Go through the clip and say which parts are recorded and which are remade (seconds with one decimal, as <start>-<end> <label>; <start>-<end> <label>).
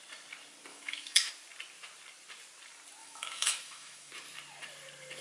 0.0-0.7 recorded; 0.7-1.3 remade; 1.3-3.0 recorded; 3.0-4.1 remade; 4.1-5.2 recorded